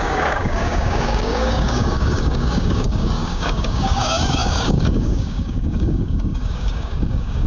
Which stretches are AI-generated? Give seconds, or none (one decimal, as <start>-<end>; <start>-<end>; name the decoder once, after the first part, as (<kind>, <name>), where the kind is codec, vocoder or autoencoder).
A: 0.0-7.5 (codec, DAC)